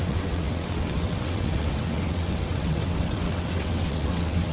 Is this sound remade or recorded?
remade